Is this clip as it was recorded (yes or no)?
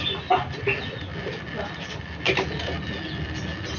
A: yes